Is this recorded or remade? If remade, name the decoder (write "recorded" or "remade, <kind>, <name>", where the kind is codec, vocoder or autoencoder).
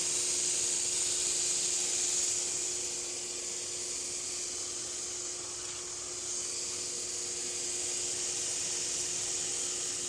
recorded